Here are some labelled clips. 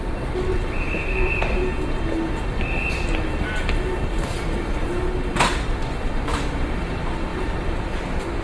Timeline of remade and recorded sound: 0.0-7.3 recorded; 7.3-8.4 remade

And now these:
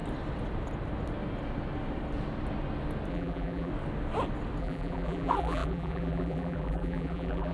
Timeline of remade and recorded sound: 0.0-3.1 recorded; 3.1-3.7 remade; 3.7-4.6 recorded; 4.6-7.5 remade

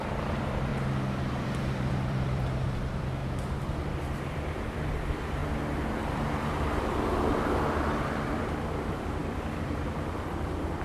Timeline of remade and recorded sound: 0.0-0.7 remade; 0.7-1.3 recorded; 1.3-3.2 remade; 3.2-4.1 recorded; 4.1-5.4 remade; 5.4-5.9 recorded; 5.9-10.8 remade

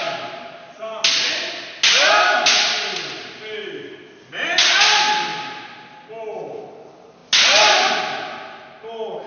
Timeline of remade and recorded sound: 0.0-9.3 recorded

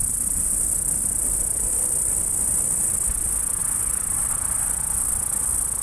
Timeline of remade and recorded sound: 0.0-1.6 remade; 1.6-5.8 recorded

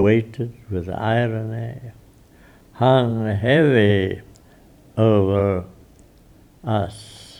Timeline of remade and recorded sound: 0.0-3.1 recorded; 3.1-3.9 remade; 3.9-7.4 recorded